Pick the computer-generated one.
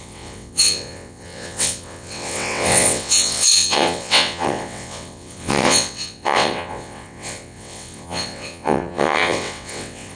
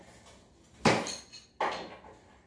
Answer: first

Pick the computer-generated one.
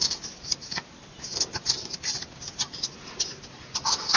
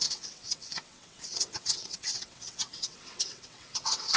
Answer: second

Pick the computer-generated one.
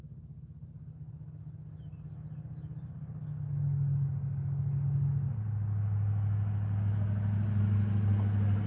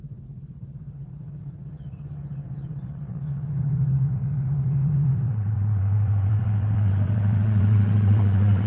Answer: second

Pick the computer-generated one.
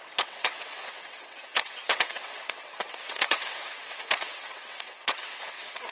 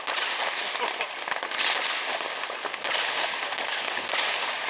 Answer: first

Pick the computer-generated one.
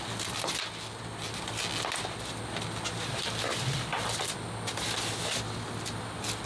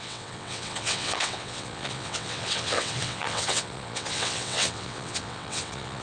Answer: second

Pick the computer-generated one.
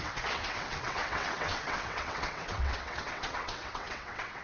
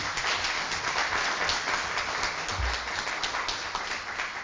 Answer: first